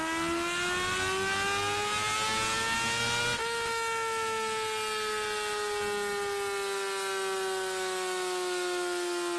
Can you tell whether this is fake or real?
real